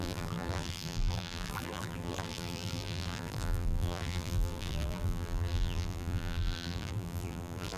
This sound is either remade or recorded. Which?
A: remade